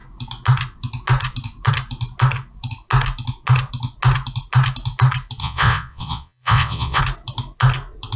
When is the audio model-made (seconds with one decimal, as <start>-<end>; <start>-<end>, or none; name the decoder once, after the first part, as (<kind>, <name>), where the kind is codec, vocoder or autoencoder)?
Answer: 5.4-7.0 (vocoder, WaveNeXt)